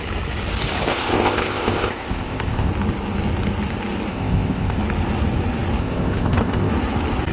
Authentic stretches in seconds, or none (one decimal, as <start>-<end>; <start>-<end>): 0.0-0.9; 2.7-4.1; 4.8-5.8; 6.7-7.3